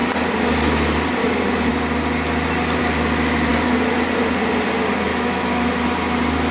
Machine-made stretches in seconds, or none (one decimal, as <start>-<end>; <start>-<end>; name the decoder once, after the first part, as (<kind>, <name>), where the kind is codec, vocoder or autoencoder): 5.1-5.7 (autoencoder, DAC-VAE)